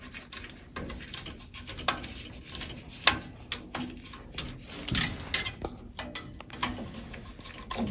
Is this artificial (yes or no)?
no